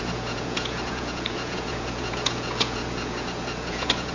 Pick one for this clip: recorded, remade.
remade